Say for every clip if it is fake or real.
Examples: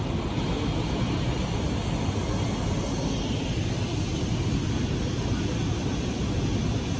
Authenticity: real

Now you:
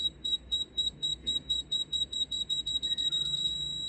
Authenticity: fake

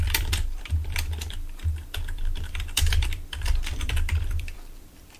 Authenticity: fake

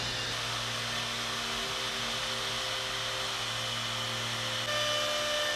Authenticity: real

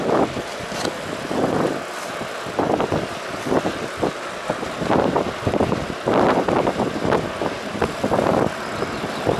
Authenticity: fake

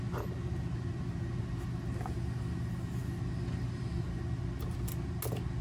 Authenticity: real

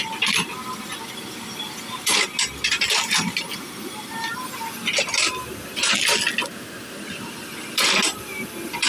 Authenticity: real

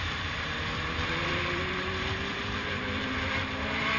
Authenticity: fake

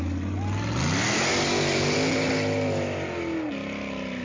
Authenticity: real